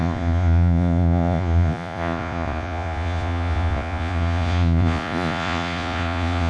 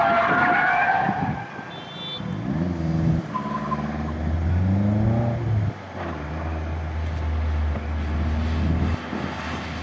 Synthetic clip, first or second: first